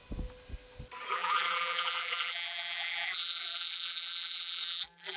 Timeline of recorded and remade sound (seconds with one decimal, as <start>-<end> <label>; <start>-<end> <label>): 0.0-1.1 recorded; 1.1-5.2 remade